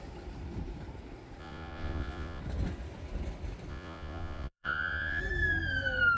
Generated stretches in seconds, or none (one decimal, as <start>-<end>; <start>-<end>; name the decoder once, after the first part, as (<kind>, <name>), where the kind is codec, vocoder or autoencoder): 1.4-2.4 (vocoder, Vocos); 3.7-5.2